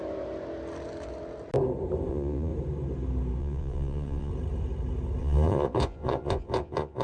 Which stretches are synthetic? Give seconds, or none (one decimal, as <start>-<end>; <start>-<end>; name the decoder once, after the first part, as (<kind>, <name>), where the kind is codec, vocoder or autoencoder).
2.1-2.5 (vocoder, Vocos); 3.4-4.3; 5.2-7.0